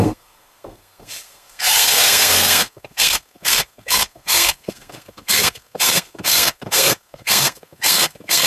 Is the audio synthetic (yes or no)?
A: yes